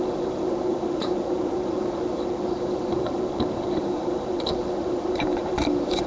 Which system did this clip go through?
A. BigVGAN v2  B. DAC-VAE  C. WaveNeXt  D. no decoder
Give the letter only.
A